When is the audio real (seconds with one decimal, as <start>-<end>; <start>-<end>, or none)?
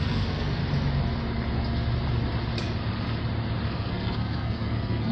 0.6-3.7